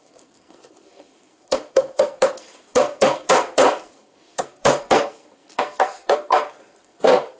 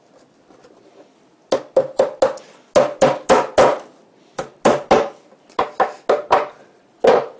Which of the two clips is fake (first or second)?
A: first